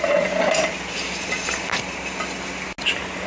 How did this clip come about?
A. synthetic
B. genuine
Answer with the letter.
B